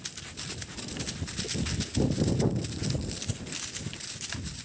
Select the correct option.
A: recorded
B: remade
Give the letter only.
A